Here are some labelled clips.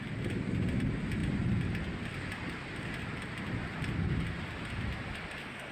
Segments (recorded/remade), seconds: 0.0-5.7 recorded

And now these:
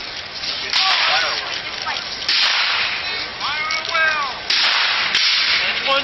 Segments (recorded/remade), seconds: 0.0-0.6 remade; 0.6-6.0 recorded